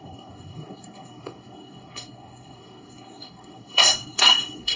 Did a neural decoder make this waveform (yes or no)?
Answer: yes